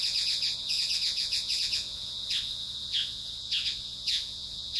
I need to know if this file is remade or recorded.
remade